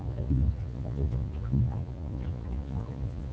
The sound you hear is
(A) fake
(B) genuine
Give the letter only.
A